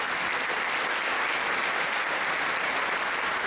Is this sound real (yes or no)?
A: yes